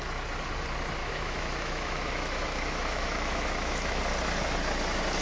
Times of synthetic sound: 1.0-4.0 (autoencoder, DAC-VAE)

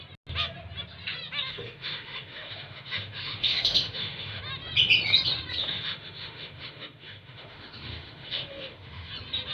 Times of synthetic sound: 1.5-4.4 (autoencoder, DAC-VAE); 5.6-9.1

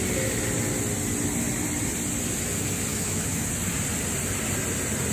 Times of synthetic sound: 2.9-3.5 (autoencoder, DAC-VAE)